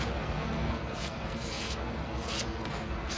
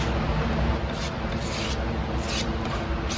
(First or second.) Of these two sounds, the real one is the second